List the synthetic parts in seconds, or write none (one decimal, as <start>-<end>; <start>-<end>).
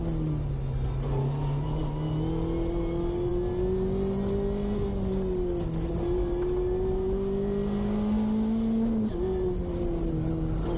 none